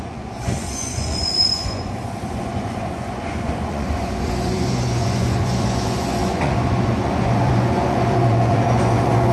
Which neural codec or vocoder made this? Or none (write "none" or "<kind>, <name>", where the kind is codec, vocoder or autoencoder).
vocoder, Vocos